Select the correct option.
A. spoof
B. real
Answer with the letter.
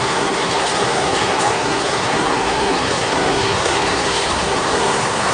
A